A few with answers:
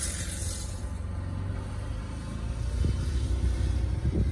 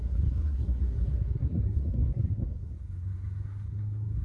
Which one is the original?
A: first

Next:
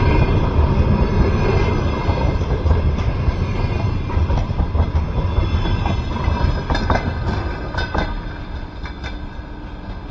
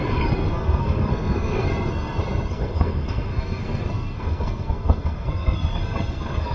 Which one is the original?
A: first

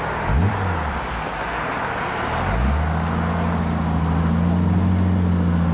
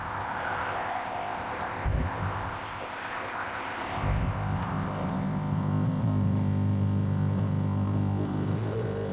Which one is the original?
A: first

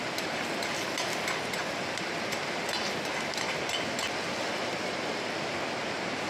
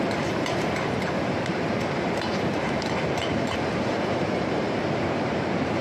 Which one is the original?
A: first